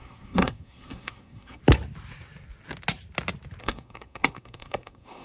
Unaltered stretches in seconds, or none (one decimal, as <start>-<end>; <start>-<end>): 1.6-3.6